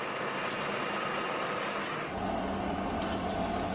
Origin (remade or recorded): recorded